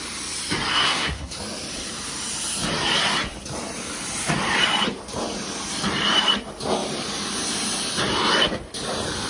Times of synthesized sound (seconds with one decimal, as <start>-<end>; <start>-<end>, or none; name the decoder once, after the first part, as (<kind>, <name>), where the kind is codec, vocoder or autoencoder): 0.7-1.4 (codec, SNAC)